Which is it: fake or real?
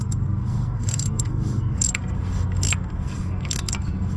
fake